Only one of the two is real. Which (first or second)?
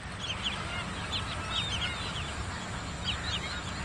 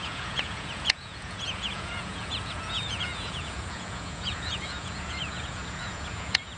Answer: first